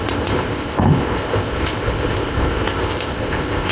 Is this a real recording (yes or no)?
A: no